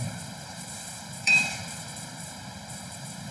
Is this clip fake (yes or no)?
yes